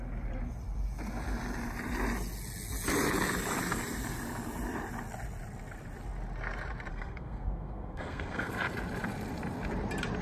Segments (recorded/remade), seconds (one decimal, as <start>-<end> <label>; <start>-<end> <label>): 0.0-6.9 recorded; 6.9-8.5 remade; 8.5-10.2 recorded